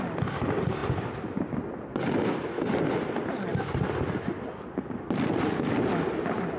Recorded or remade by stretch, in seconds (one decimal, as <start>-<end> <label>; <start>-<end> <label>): 0.0-6.6 recorded